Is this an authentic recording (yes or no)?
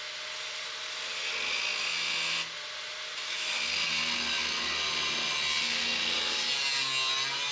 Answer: yes